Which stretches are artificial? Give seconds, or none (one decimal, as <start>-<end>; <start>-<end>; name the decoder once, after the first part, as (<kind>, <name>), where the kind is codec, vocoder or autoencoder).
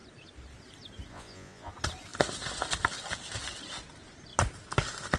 1.1-1.7 (vocoder, Vocos)